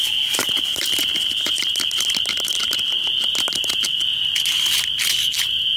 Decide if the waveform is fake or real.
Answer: real